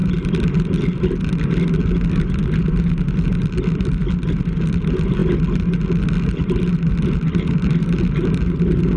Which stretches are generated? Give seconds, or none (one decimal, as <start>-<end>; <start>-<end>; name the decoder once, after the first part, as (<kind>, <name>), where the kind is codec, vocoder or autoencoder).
none